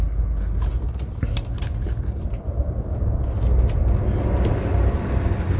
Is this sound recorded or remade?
recorded